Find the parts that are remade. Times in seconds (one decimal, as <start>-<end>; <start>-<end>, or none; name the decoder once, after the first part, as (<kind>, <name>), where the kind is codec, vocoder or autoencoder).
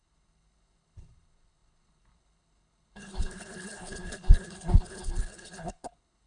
0.0-6.3 (codec, HILCodec)